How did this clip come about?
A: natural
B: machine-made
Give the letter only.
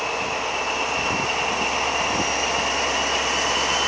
A